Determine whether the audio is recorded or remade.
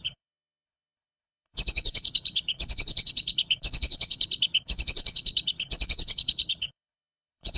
remade